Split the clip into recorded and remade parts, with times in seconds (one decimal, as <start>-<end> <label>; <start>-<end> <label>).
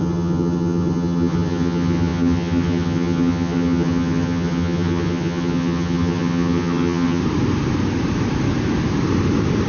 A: 0.0-7.2 remade; 7.2-9.7 recorded